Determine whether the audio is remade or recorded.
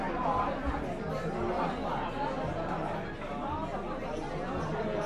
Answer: recorded